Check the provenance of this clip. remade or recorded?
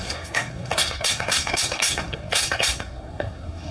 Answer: remade